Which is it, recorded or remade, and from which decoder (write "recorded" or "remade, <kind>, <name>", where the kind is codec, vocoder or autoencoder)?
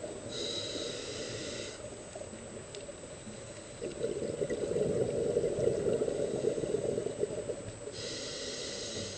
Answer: recorded